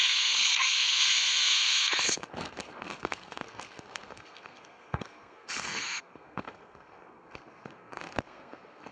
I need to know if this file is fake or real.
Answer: fake